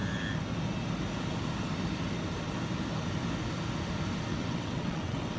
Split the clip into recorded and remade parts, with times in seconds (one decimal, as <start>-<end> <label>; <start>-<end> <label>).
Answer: 0.0-4.3 recorded; 4.3-5.4 remade